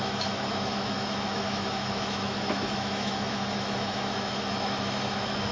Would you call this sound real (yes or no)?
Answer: no